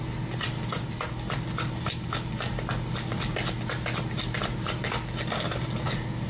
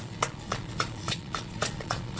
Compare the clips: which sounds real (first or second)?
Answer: first